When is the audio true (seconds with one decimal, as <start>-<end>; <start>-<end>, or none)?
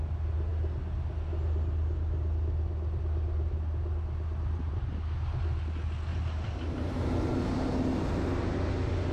0.0-6.1; 7.0-9.1